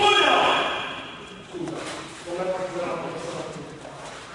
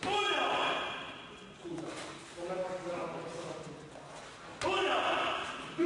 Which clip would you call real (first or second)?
second